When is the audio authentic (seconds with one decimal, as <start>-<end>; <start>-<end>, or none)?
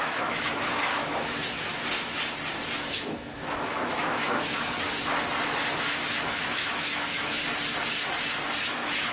1.7-2.9; 5.0-6.1; 7.4-8.6